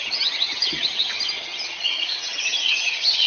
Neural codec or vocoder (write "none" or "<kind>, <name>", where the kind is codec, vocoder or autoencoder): vocoder, HiFi-GAN